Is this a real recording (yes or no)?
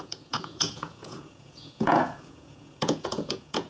no